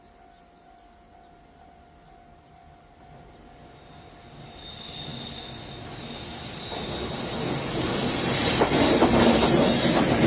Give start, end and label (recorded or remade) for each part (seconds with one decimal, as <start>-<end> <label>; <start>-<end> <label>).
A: 0.0-10.3 recorded